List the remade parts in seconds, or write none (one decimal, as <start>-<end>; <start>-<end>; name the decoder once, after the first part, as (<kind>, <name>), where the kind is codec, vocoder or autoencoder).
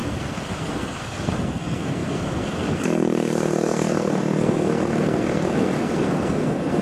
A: 0.0-6.8 (codec, SNAC)